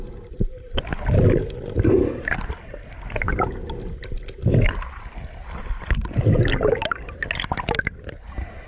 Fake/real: real